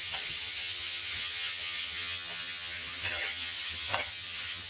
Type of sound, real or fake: fake